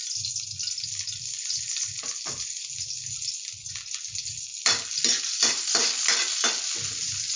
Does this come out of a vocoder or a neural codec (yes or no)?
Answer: no